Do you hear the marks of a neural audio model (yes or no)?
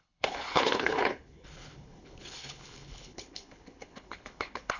yes